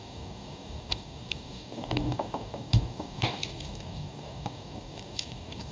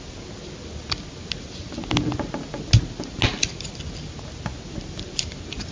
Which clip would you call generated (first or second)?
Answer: first